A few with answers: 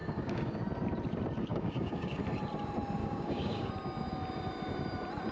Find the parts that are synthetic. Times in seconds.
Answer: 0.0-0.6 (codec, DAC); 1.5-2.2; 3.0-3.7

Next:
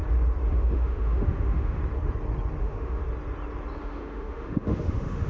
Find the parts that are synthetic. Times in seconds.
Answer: 0.5-1.8 (autoencoder, DAC-VAE); 2.6-3.0; 3.8-5.3